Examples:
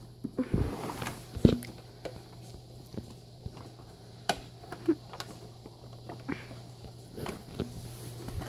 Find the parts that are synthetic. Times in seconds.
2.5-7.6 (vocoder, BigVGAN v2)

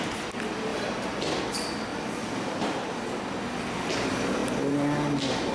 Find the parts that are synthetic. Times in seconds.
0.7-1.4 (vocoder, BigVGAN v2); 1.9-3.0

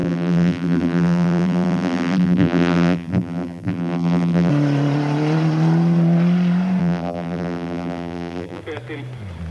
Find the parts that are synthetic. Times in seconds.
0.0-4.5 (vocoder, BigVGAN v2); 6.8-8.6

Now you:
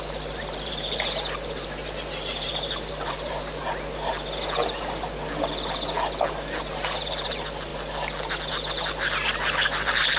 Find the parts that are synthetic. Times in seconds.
0.0-3.6 (vocoder, BigVGAN v2); 6.7-7.7; 8.5-10.2

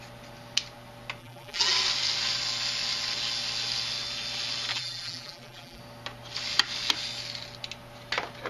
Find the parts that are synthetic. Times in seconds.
1.2-1.7 (vocoder, BigVGAN v2); 4.7-5.8

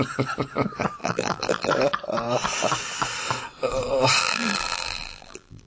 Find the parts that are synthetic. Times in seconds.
1.0-1.7 (vocoder, BigVGAN v2); 4.2-5.7